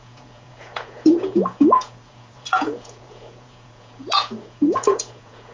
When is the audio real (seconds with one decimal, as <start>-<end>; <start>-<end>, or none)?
none

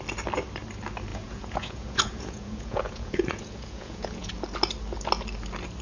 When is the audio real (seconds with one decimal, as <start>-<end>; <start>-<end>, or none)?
0.0-1.1; 4.3-5.8

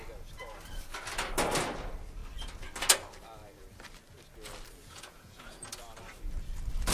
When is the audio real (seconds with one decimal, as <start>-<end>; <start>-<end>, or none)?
0.0-4.8; 5.7-6.9

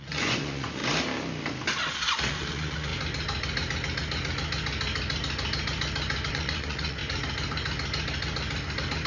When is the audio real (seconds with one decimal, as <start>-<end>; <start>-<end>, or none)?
0.8-2.3; 2.9-6.3; 7.0-9.1

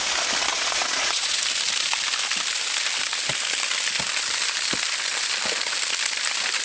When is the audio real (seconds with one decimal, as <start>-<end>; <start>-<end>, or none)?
0.0-0.5; 1.4-6.6